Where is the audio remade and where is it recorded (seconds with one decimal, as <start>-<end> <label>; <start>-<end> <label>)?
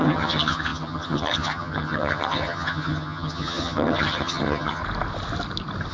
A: 0.0-4.8 remade; 4.8-5.9 recorded